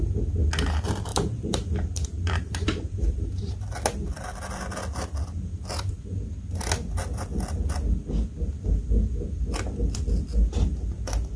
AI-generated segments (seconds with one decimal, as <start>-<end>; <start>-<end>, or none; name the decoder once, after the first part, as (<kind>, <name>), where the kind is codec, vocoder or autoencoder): 1.1-3.5 (vocoder, BigVGAN v2)